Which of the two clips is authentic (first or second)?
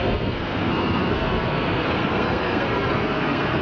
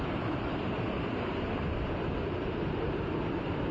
second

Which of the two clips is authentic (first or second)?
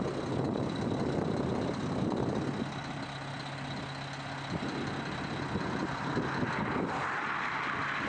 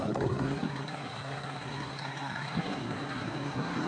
first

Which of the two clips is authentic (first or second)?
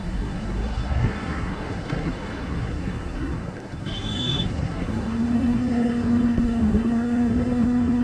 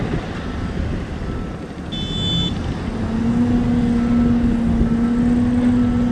second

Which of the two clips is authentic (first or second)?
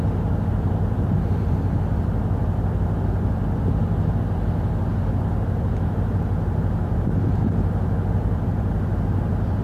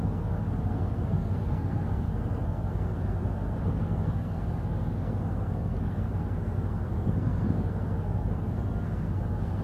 first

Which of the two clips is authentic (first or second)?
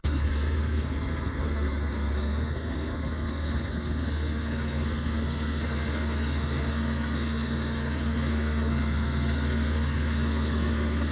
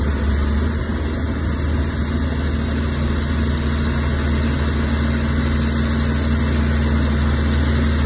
second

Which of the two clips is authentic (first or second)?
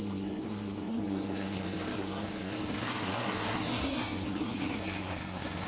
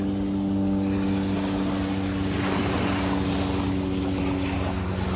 second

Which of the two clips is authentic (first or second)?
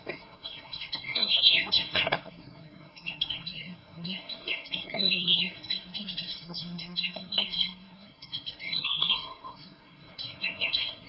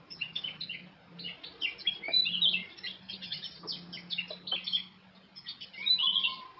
second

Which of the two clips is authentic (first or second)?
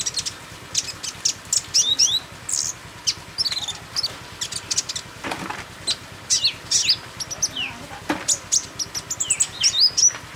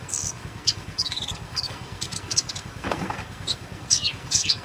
first